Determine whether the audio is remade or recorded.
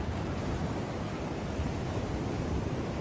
recorded